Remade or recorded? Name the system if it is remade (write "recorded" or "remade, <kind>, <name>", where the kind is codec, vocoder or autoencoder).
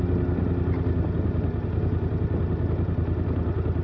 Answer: recorded